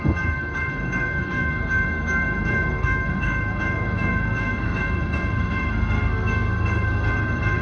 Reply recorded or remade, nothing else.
remade